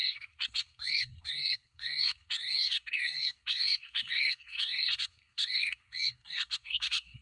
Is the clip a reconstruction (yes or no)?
yes